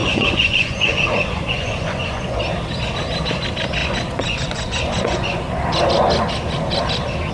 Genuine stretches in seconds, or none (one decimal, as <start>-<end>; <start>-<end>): 2.4-3.8; 5.4-7.3